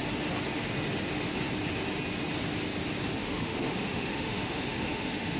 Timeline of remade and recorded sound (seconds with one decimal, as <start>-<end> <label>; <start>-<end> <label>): 0.0-3.2 recorded; 3.2-5.4 remade